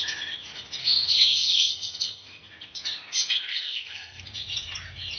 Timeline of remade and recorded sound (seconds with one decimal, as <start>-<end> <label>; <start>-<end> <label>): 0.0-0.8 recorded; 0.8-2.5 remade; 2.5-3.5 recorded; 3.5-4.2 remade; 4.2-5.2 recorded